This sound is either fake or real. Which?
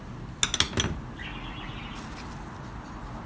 real